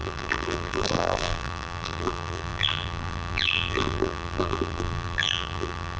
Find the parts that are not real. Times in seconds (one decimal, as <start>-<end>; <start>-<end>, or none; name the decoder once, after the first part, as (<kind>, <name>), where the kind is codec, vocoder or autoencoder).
0.0-6.0 (vocoder, BigVGAN v2)